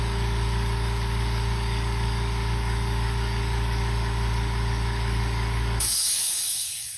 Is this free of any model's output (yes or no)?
no